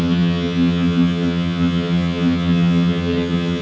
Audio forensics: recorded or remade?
remade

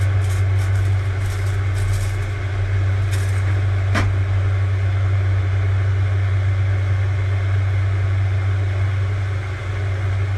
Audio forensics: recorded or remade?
recorded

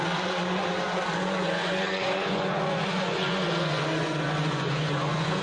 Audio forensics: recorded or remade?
remade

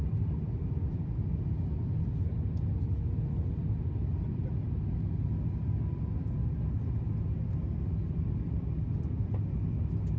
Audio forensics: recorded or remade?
recorded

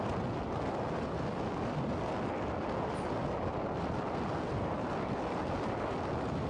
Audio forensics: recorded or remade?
recorded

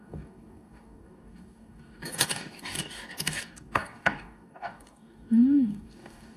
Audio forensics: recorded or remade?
remade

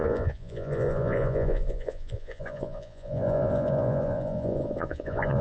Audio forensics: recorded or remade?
remade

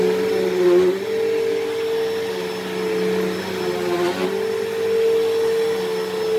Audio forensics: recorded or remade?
recorded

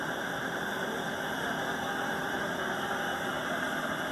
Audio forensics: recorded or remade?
remade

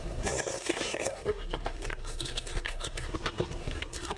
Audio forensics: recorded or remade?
remade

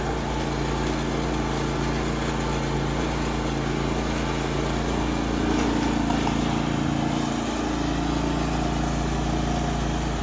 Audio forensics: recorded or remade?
recorded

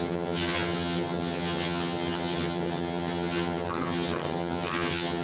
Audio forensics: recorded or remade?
remade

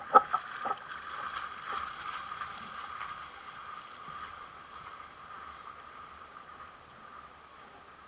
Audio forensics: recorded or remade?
recorded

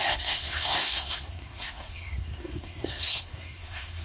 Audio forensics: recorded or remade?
remade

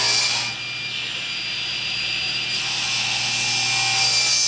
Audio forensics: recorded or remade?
recorded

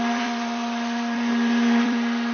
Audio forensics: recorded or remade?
remade